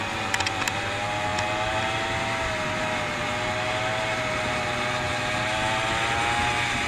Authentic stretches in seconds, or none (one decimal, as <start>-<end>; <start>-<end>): 0.0-6.9